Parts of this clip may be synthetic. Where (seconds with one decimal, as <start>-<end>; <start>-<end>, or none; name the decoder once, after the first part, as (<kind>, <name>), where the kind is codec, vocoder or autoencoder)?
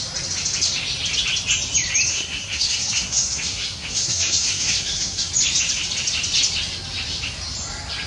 2.1-5.3 (codec, SNAC)